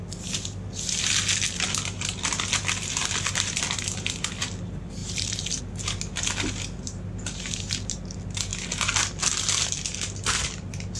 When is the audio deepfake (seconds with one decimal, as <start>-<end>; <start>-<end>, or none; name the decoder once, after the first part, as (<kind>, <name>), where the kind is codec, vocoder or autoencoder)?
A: 3.0-3.6 (vocoder, BigVGAN v2); 5.0-5.6